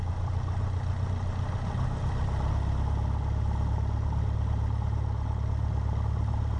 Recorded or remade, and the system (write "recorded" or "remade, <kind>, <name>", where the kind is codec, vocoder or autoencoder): recorded